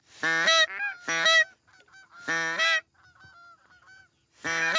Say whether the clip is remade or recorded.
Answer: recorded